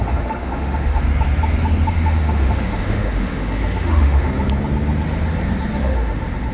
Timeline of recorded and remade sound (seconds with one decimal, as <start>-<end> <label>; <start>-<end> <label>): 0.0-1.1 remade; 1.1-1.9 recorded; 1.9-4.3 remade; 4.3-5.8 recorded; 5.8-6.5 remade